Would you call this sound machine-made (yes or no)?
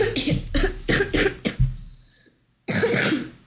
no